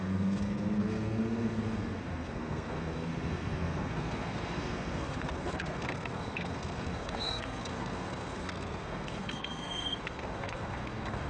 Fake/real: fake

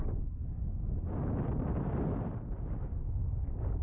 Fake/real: real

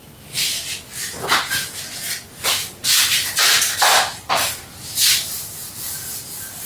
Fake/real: real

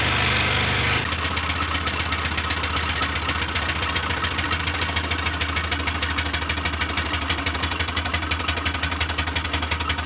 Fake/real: real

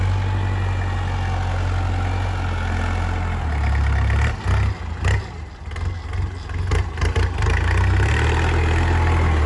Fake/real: real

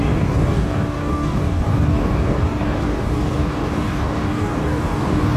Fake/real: fake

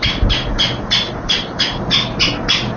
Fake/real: real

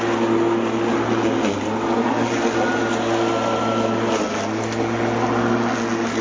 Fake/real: real